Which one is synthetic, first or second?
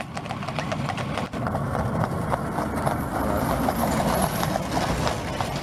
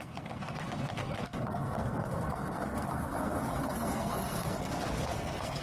second